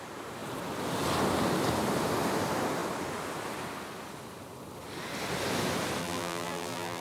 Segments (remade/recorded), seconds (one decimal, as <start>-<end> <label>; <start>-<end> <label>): 0.0-6.0 recorded; 6.0-7.0 remade